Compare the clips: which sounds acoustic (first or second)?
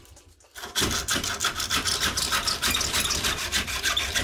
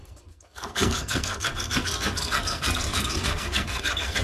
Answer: first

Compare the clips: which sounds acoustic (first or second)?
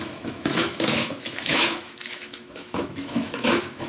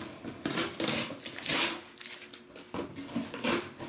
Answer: second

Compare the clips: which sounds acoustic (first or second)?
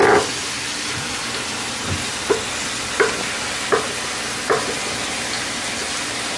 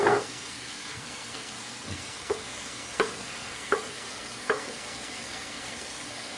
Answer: first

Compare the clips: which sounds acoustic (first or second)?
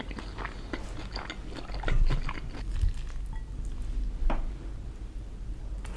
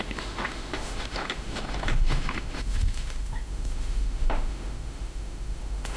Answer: first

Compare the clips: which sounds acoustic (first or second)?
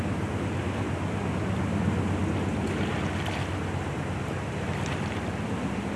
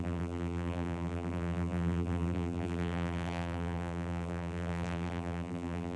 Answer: first